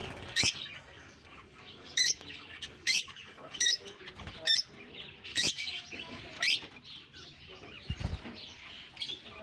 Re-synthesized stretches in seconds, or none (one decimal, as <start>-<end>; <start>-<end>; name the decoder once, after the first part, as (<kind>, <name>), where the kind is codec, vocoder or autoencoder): 0.0-4.0 (codec, DAC); 5.3-6.2